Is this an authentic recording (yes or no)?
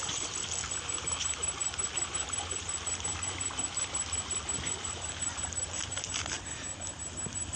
yes